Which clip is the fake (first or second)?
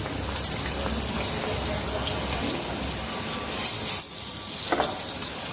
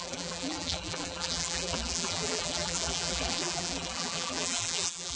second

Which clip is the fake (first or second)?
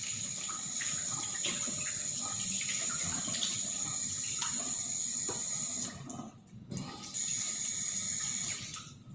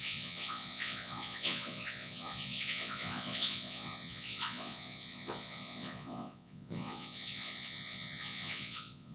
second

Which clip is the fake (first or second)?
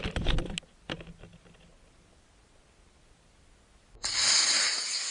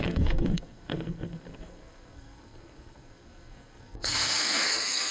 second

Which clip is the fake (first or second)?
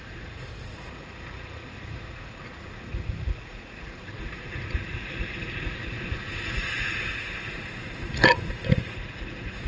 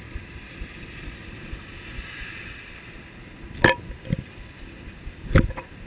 first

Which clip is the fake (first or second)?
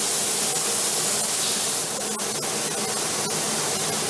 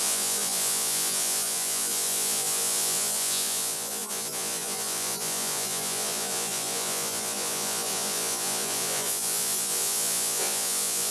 second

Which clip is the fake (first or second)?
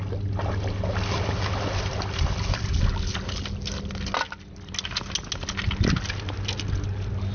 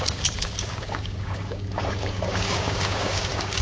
second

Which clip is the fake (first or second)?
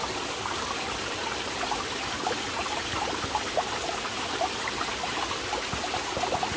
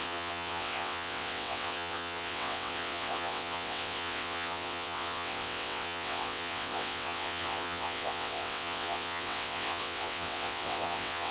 second